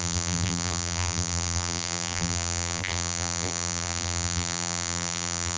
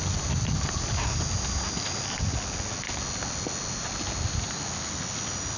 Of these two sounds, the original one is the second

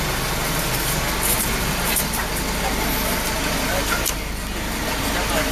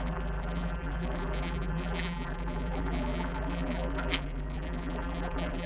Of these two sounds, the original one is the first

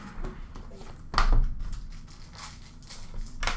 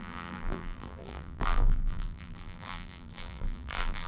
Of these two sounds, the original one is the first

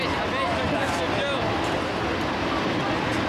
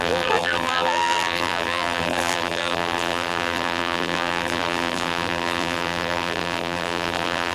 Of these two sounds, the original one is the first